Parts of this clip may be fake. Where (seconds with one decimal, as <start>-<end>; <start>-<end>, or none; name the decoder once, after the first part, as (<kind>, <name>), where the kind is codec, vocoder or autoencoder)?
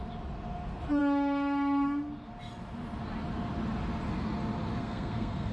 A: 4.8-5.5 (codec, SNAC)